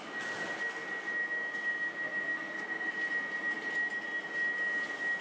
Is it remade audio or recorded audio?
recorded